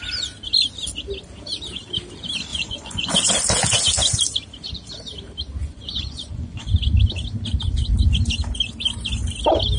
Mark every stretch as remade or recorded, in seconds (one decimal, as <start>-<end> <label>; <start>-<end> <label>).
0.0-2.5 recorded; 2.5-3.3 remade; 3.3-5.6 recorded; 5.6-6.7 remade; 6.7-9.8 recorded